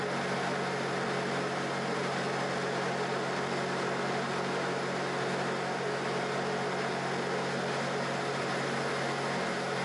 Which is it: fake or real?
real